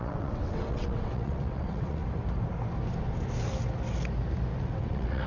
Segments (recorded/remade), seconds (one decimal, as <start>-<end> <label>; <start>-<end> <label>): 0.0-2.0 remade; 2.0-4.6 recorded; 4.6-5.3 remade